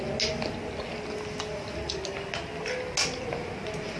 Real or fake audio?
real